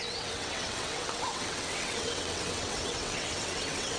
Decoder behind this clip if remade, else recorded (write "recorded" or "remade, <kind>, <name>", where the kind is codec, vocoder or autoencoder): remade, vocoder, WaveNeXt